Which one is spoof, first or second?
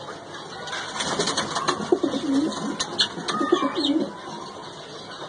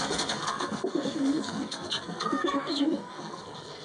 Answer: second